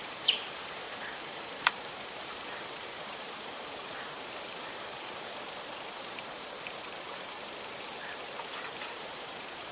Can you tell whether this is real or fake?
fake